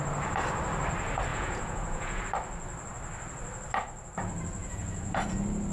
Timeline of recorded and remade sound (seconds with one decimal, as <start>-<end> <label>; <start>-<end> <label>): 0.0-1.3 recorded; 1.3-2.2 remade; 2.2-4.6 recorded; 4.6-5.2 remade; 5.2-5.7 recorded